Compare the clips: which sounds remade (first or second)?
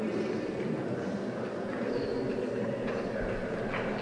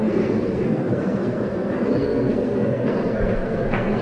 second